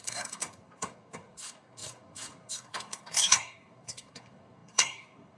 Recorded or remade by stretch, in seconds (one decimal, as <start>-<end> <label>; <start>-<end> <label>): 0.0-5.4 remade